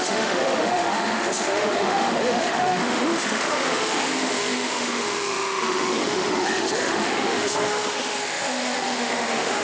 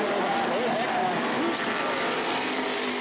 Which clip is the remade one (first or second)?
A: first